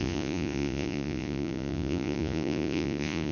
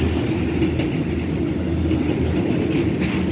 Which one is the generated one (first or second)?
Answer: first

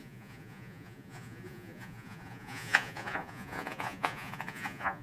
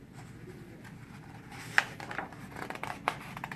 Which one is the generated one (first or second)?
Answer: first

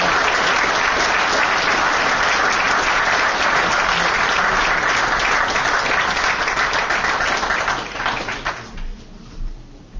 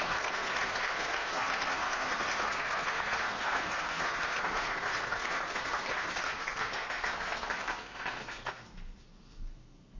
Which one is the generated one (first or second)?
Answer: second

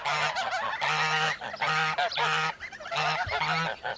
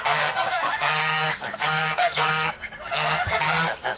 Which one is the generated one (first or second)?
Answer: second